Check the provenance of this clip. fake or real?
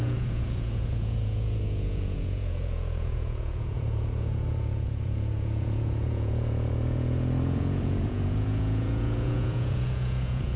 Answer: fake